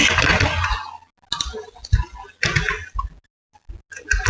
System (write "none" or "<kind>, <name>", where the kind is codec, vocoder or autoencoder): none